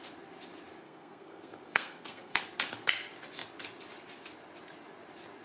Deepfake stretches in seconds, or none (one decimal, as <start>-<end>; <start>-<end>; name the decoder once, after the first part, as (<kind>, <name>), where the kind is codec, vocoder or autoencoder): 0.8-2.4 (codec, SNAC)